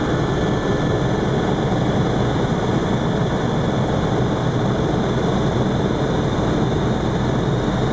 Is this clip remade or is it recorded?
recorded